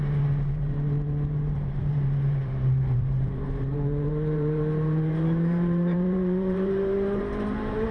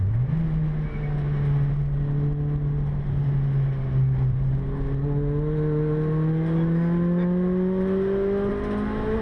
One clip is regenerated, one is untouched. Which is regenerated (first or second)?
first